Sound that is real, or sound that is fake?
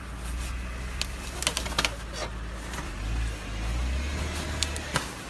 real